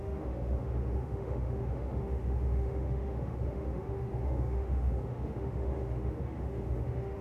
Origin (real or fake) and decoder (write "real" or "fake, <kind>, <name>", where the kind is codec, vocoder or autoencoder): fake, autoencoder, DAC-VAE